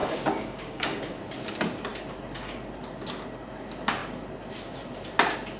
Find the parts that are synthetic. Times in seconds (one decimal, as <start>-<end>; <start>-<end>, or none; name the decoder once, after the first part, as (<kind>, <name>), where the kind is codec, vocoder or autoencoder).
0.0-1.2 (codec, DAC)